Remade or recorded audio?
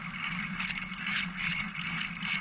recorded